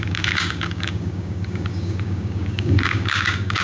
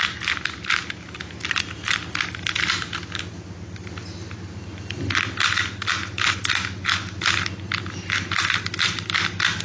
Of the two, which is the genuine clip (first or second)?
second